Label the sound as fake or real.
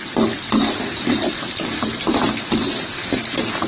real